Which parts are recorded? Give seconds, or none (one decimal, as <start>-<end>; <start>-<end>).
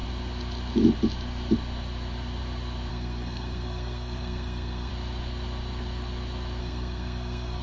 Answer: 0.0-2.9; 4.9-6.6